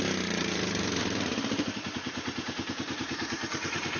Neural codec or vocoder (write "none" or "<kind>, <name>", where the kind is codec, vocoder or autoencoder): vocoder, BigVGAN v2